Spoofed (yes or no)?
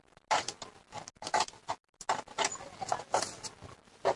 no